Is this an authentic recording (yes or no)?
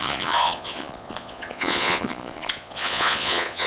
no